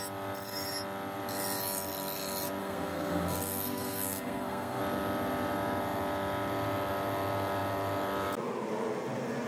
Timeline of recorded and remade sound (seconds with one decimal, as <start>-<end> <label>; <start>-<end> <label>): 0.0-2.6 recorded; 2.6-4.8 remade; 4.8-9.5 recorded